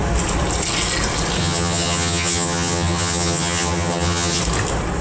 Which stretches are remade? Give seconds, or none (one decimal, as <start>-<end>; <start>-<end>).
1.4-4.4